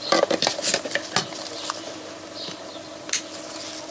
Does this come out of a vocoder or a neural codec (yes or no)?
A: no